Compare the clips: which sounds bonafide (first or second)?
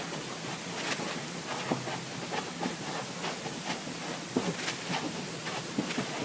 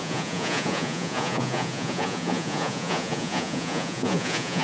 first